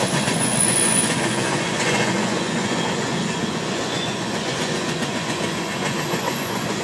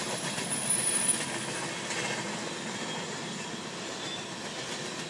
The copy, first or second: first